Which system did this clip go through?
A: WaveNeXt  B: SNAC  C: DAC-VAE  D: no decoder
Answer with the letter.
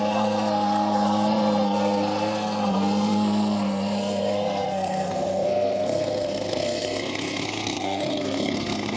B